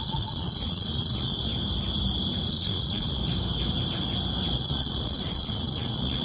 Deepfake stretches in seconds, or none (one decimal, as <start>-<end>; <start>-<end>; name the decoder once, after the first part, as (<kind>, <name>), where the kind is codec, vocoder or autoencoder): 0.0-1.5 (vocoder, Vocos); 2.5-3.2; 4.6-6.2

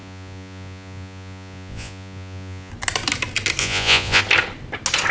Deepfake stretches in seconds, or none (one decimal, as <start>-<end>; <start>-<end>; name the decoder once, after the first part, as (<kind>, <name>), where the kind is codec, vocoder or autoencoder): 0.0-2.7 (vocoder, Vocos); 3.6-4.2